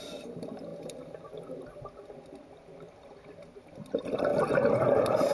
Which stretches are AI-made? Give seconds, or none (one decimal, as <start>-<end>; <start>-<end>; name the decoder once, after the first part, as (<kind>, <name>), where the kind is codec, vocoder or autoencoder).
none